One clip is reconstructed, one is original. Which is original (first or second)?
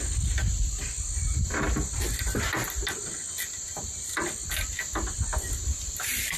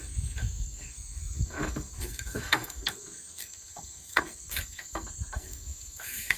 first